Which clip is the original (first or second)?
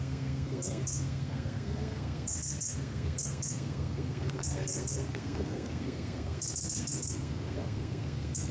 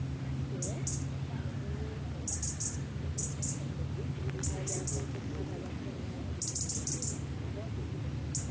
second